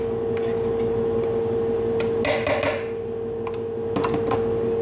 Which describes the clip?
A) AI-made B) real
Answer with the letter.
B